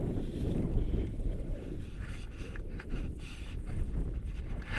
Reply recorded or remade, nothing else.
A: remade